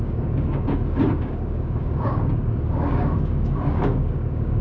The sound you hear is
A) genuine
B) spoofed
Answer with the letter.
B